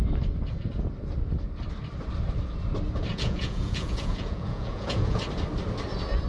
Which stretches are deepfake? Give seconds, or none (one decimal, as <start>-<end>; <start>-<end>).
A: 3.1-5.2